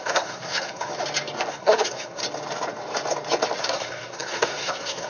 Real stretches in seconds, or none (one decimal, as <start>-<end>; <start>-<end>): 0.9-1.5; 2.2-3.6